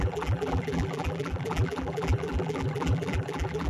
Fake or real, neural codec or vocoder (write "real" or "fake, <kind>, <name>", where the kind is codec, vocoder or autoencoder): fake, vocoder, BigVGAN v2